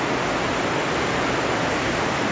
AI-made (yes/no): no